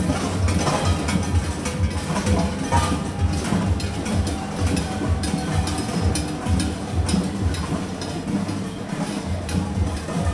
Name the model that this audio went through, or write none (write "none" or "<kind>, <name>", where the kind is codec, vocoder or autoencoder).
none